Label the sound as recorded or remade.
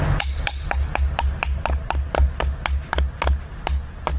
recorded